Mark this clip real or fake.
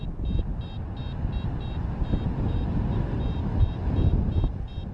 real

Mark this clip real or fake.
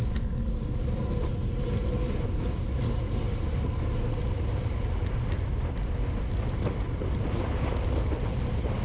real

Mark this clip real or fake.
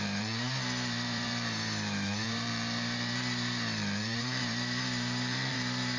fake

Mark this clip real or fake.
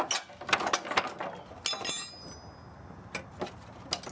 real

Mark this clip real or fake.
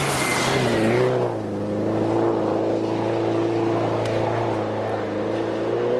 real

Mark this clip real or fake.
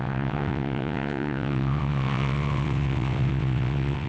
fake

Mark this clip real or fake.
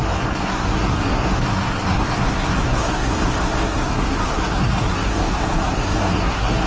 fake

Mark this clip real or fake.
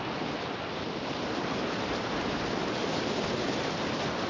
real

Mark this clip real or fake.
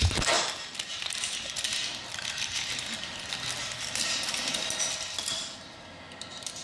real